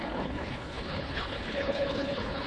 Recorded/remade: remade